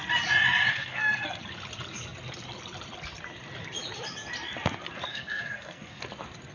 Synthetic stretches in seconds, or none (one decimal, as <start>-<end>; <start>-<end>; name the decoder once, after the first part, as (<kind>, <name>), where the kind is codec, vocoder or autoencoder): 0.7-1.4 (codec, SNAC); 5.1-6.0